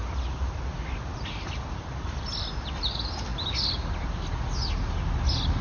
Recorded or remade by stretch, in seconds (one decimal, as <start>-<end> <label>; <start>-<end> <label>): 0.0-5.6 recorded